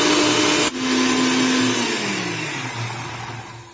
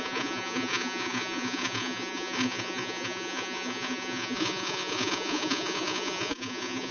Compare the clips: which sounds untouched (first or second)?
first